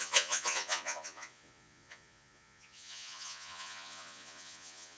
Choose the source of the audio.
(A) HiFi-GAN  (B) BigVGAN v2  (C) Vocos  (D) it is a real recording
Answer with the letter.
C